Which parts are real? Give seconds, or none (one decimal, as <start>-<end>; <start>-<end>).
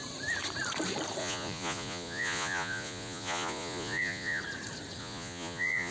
0.0-1.2; 4.4-5.0